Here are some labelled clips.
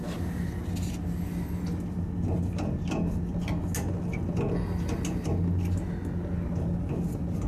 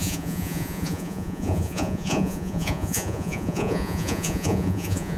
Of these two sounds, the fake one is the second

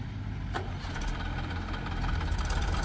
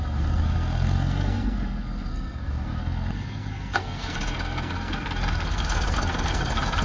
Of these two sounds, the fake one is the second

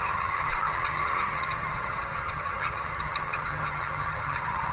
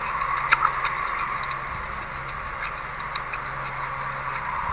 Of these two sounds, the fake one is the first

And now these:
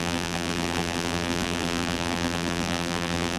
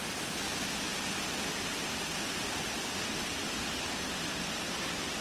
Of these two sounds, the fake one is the first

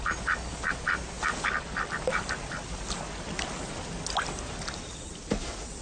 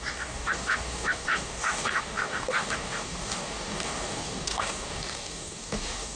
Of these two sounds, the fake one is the second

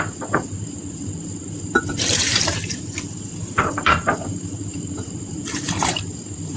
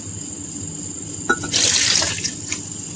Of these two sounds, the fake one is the first